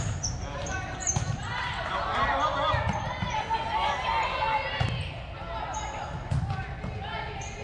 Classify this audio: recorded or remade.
recorded